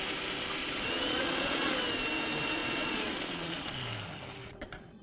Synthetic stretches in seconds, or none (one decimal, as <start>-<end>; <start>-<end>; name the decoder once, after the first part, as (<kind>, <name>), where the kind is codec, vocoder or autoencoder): 0.6-1.7 (vocoder, Vocos); 2.6-3.7; 4.4-5.0

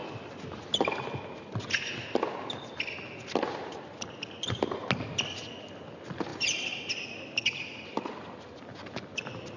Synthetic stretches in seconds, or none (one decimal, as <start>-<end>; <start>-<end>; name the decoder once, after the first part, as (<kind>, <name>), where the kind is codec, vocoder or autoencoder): none

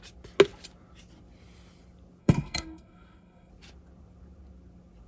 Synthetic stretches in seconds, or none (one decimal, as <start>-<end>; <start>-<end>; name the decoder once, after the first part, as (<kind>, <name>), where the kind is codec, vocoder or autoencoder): 2.2-3.5 (codec, SNAC)